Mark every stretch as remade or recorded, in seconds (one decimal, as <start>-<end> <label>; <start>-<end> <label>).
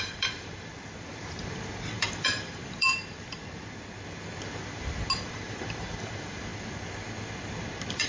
0.0-0.7 remade; 0.7-1.9 recorded; 1.9-3.4 remade; 3.4-5.2 recorded; 5.2-6.5 remade; 6.5-7.6 recorded; 7.6-8.1 remade